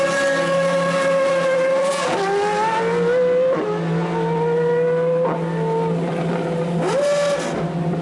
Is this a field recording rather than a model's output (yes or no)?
yes